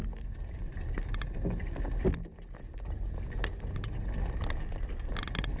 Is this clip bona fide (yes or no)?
yes